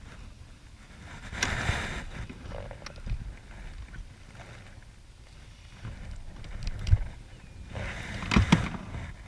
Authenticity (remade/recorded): recorded